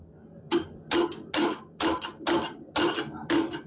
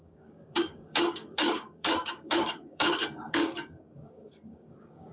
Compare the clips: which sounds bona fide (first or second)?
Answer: first